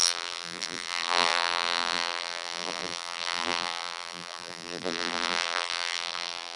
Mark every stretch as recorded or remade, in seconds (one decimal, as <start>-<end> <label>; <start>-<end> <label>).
0.0-6.6 remade